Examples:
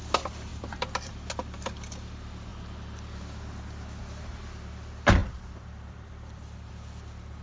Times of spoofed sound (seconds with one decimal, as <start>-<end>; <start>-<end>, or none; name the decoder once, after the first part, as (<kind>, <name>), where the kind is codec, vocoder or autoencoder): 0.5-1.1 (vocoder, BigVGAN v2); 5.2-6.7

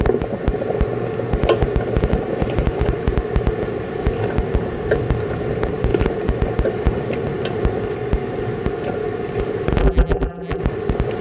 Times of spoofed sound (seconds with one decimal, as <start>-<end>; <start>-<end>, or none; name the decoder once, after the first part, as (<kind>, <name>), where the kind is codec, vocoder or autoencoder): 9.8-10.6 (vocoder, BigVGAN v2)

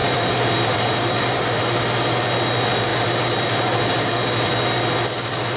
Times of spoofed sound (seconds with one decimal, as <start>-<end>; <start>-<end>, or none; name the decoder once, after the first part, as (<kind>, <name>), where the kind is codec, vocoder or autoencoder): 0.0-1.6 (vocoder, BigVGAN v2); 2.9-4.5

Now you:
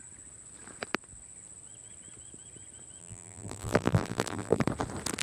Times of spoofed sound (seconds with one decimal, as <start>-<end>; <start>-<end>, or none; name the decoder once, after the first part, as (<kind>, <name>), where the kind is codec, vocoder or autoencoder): 3.0-4.6 (vocoder, BigVGAN v2)